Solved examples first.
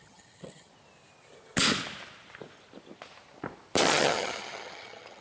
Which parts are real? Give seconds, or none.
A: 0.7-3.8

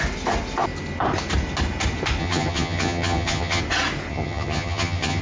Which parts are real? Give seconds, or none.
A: 0.0-2.2; 3.6-4.1

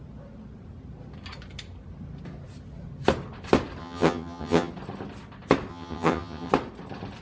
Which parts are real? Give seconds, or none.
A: 0.0-3.8; 4.7-5.7; 6.5-7.2

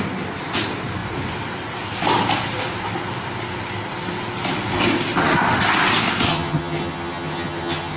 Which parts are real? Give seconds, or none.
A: 0.0-6.3